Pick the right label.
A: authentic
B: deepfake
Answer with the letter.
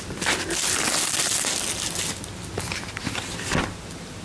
A